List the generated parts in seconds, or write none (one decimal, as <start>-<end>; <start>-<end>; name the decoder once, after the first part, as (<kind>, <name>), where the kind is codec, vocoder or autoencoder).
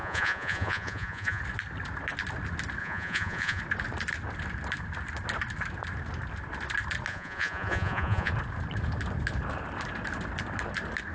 0.0-1.4 (vocoder, Vocos); 2.8-3.6; 7.1-8.3